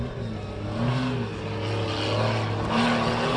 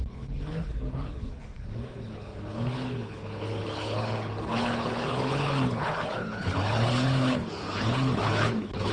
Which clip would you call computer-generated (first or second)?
second